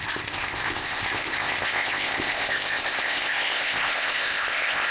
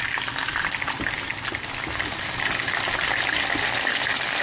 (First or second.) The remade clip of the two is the first